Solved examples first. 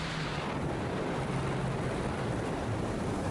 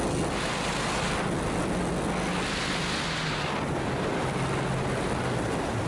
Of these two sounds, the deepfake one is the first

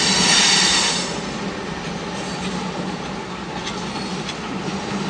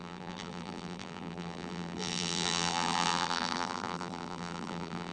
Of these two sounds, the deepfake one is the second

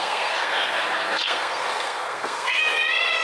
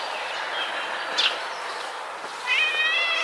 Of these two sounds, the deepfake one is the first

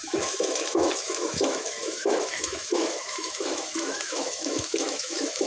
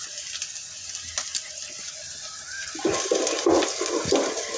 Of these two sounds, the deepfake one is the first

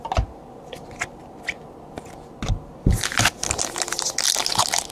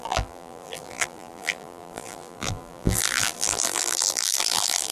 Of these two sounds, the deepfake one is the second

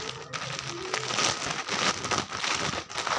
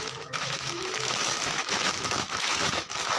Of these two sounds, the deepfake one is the second